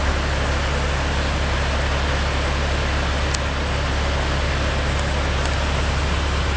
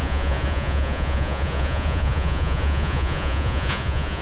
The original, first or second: first